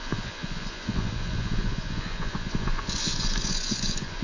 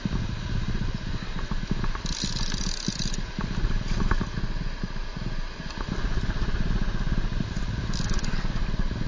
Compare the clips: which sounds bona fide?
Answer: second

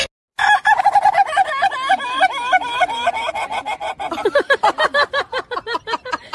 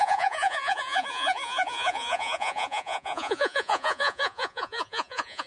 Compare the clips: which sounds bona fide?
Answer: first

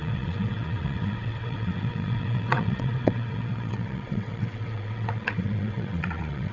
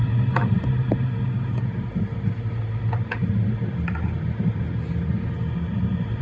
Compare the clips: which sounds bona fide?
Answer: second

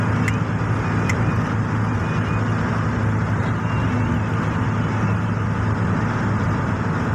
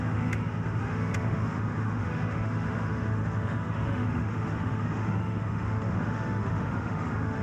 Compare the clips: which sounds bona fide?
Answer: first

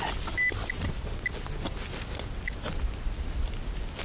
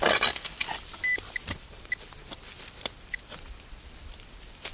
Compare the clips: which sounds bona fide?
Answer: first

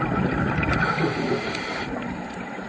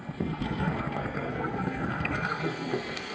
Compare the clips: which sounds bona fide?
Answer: first